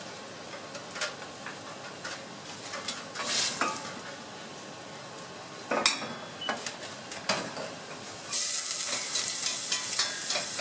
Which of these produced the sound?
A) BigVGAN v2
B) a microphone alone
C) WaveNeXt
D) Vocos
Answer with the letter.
B